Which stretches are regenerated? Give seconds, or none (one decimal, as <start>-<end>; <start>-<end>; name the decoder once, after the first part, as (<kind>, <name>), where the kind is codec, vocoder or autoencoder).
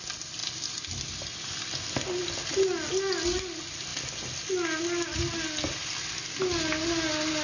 none